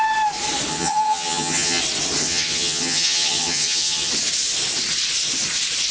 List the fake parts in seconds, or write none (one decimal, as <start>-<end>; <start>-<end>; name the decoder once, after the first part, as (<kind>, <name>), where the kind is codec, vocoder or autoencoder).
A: 0.7-1.8 (vocoder, HiFi-GAN); 2.2-4.1

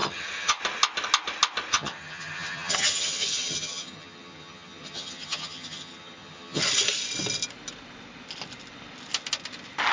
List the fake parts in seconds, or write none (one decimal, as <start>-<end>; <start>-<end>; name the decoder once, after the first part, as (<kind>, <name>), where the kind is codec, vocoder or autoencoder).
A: 0.0-0.6 (vocoder, HiFi-GAN); 1.7-6.6

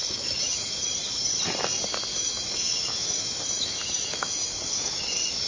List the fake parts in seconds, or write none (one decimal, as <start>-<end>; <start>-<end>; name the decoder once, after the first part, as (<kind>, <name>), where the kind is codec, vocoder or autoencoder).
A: 0.0-0.9 (autoencoder, DAC-VAE); 2.1-5.5

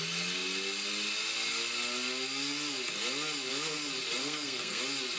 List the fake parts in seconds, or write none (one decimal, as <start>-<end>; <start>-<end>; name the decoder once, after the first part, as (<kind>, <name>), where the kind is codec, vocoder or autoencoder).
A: 4.2-4.8 (codec, SNAC)

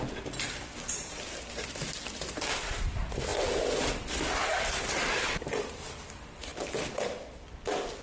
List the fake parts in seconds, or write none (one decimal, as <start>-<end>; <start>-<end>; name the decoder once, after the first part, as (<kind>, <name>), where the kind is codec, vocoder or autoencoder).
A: 0.0-8.0 (vocoder, BigVGAN v2)

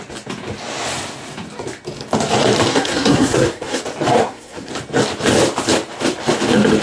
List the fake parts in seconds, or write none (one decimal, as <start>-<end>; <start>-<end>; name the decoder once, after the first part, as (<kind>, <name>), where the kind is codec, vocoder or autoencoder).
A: 2.7-3.8 (codec, SNAC); 4.2-4.7